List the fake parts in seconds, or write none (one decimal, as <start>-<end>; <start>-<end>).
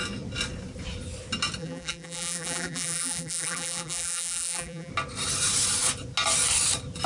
1.6-4.9